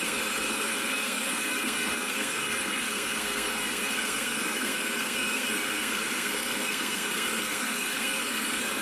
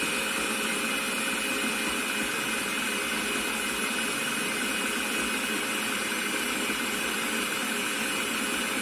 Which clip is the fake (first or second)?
first